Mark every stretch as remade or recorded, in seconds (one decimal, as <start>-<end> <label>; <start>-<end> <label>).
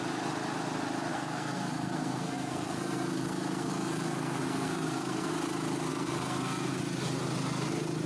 0.0-1.1 recorded; 1.1-5.3 remade; 5.3-5.9 recorded; 5.9-6.8 remade; 6.8-8.1 recorded